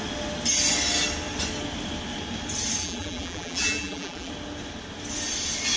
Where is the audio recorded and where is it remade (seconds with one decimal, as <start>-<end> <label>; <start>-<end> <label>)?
0.0-2.8 recorded; 2.8-4.3 remade; 4.3-5.8 recorded